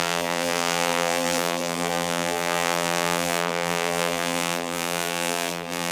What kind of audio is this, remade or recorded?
remade